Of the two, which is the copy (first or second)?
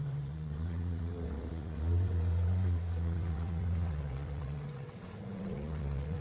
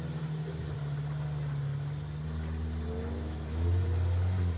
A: first